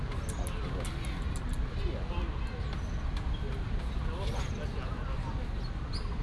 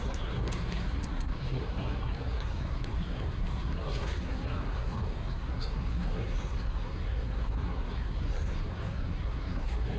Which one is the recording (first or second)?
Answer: first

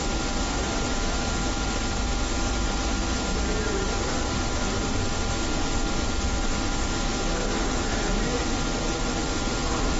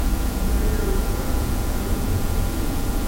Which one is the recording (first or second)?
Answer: first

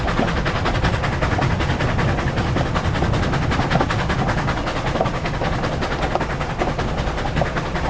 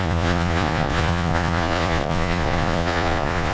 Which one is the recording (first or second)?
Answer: first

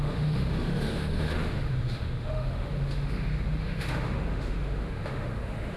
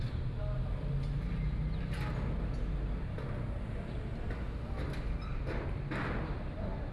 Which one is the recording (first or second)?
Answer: second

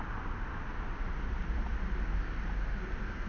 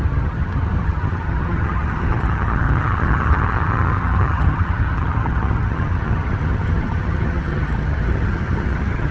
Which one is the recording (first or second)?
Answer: first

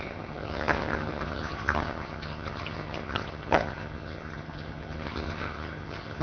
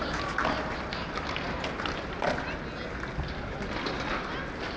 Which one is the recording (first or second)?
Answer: second